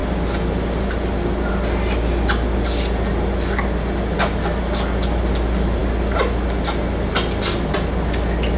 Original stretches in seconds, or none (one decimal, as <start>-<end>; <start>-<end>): 0.0-8.6